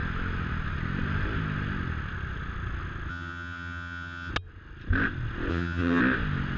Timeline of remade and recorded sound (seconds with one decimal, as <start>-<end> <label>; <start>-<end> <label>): 0.0-3.1 recorded; 3.1-4.3 remade; 4.3-5.5 recorded; 5.5-6.0 remade; 6.0-6.6 recorded